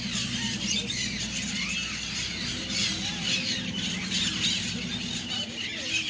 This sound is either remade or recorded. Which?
recorded